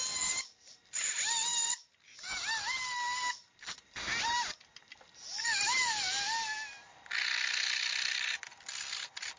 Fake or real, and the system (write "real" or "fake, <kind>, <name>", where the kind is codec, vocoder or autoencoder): real